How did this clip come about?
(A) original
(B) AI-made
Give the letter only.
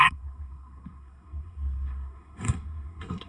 B